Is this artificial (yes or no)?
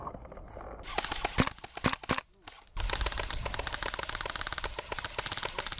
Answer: no